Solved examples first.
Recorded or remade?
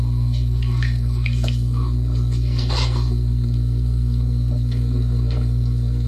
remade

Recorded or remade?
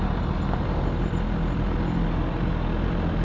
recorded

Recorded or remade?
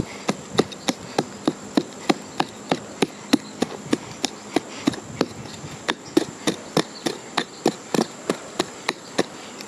recorded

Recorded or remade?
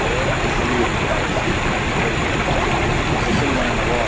recorded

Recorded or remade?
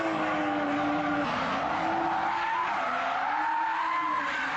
recorded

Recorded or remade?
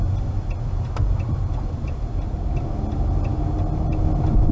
recorded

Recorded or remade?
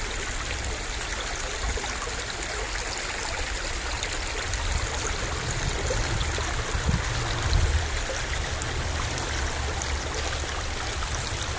recorded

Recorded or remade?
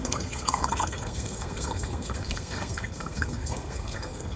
remade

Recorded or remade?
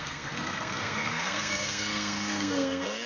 remade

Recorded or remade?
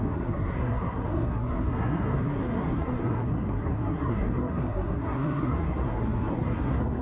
remade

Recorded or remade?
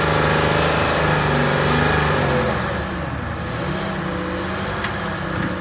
recorded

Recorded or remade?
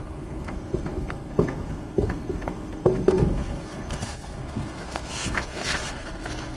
remade